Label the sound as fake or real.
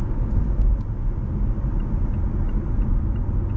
real